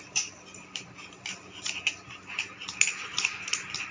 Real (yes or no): yes